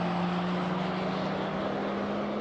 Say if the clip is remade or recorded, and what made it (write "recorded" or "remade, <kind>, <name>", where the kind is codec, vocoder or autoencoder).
recorded